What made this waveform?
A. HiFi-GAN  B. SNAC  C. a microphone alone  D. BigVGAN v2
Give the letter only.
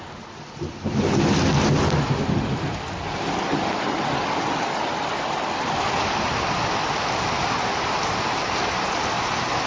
C